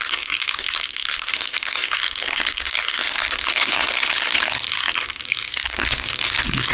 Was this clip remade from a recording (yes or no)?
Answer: yes